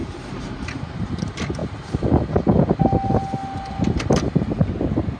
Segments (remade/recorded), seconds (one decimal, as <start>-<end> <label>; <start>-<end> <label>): 0.0-1.1 remade; 1.1-5.2 recorded